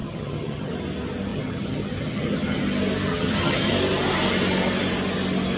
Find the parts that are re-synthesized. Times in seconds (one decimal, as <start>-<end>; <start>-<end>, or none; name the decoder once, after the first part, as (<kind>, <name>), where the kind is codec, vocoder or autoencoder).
0.0-0.7 (vocoder, HiFi-GAN); 1.3-2.6; 3.1-3.7